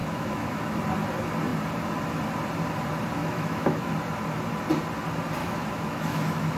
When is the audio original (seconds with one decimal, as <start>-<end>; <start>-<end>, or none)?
0.6-3.2; 3.9-5.4